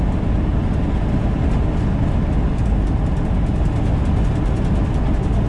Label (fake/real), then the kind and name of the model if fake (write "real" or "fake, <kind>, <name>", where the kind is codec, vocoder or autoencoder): real